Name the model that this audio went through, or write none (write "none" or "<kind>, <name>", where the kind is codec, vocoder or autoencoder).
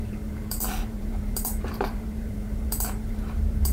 vocoder, BigVGAN v2